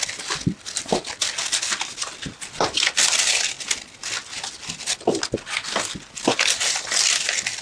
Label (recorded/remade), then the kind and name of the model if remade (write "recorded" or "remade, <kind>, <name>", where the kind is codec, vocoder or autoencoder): recorded